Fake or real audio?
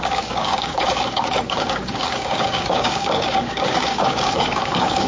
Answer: fake